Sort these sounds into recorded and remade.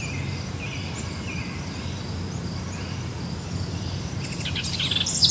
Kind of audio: recorded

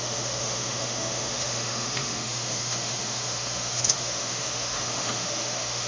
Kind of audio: remade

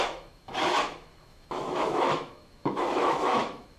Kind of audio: remade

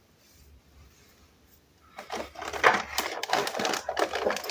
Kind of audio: recorded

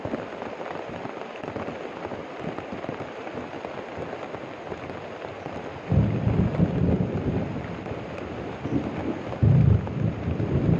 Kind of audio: recorded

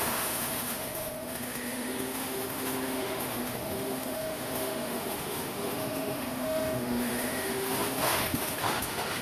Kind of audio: remade